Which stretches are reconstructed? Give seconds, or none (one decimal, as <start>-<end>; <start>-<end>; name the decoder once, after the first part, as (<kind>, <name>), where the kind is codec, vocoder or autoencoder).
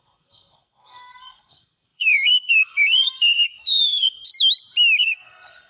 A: 0.0-4.3 (codec, SNAC); 5.0-5.7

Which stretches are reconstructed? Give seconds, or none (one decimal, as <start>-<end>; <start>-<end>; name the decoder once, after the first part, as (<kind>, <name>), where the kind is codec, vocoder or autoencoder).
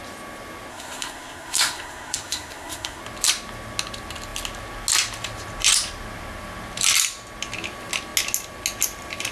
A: 0.7-3.0 (codec, SNAC)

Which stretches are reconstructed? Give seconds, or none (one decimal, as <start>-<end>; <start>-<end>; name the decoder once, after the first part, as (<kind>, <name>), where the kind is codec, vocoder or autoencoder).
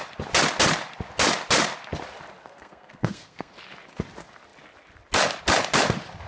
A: 2.4-3.5 (codec, SNAC)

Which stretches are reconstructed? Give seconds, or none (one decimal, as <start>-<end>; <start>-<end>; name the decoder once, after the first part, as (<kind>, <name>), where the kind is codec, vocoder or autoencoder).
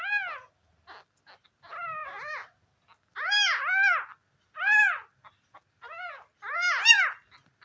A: none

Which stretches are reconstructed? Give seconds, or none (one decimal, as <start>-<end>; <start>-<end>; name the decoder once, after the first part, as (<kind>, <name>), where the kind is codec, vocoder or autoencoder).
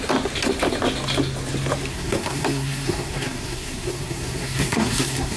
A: 1.9-5.4 (codec, SNAC)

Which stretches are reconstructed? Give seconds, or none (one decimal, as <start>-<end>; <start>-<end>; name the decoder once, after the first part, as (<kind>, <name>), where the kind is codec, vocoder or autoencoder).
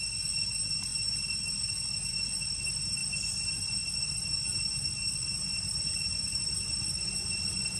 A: none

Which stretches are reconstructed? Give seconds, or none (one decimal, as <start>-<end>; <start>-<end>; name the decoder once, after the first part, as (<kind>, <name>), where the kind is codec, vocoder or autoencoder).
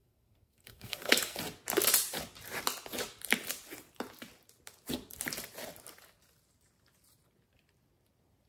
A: 0.0-1.4 (codec, SNAC)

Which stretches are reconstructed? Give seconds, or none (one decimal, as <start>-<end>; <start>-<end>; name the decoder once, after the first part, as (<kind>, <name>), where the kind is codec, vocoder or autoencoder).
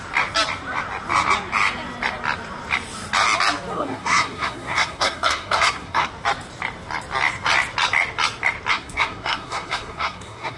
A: 3.7-6.1 (codec, SNAC); 8.7-10.6